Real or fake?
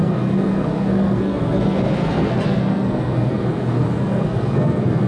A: fake